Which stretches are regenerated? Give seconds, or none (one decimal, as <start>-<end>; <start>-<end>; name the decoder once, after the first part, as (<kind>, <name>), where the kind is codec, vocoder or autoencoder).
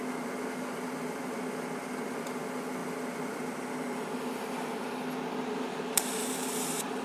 6.2-7.0 (vocoder, BigVGAN v2)